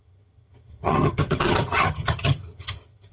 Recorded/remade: remade